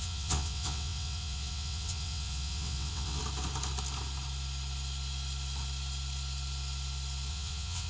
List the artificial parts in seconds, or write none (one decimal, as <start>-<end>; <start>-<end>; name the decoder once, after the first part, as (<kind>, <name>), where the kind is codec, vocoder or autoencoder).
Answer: 0.0-3.2 (vocoder, WaveNeXt); 7.3-7.9